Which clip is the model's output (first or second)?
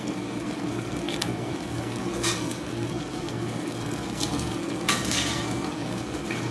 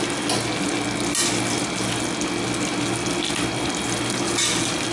first